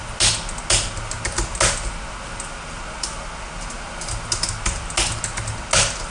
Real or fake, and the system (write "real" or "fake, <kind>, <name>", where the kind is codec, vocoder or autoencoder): real